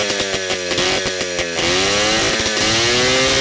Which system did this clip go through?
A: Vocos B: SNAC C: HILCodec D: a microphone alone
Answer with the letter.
D